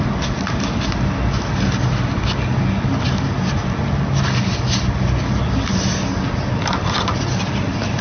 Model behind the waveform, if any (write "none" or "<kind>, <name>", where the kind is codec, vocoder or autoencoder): none